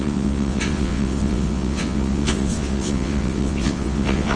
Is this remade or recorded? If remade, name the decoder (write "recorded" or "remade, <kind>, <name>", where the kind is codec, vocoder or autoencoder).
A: remade, vocoder, WaveNeXt